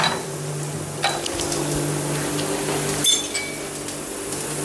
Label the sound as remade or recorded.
recorded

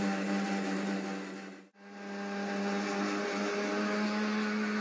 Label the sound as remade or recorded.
recorded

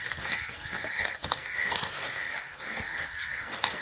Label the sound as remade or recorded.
remade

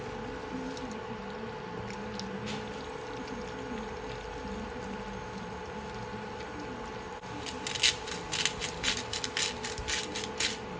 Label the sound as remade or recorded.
recorded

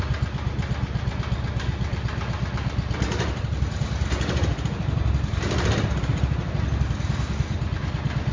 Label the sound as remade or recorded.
recorded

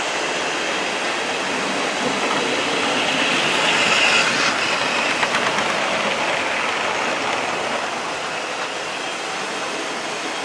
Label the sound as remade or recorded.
recorded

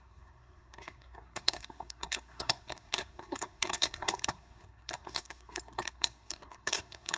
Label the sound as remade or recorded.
remade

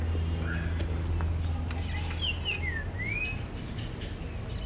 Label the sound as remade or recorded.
recorded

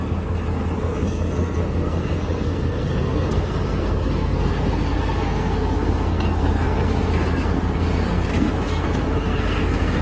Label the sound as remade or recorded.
remade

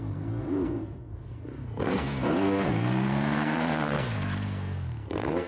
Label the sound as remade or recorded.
remade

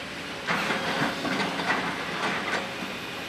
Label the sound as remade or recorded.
recorded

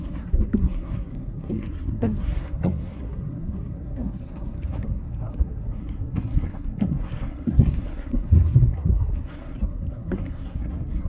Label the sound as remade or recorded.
remade